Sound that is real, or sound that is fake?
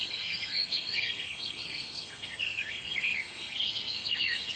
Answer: fake